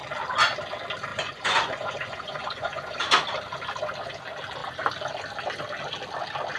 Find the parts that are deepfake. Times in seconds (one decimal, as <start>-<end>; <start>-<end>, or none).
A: 1.1-3.0